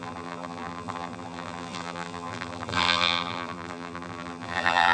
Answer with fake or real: fake